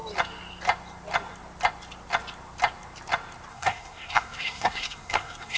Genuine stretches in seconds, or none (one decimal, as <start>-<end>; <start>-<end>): 0.0-3.5